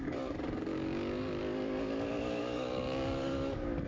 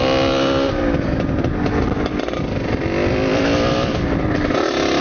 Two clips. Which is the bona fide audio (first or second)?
second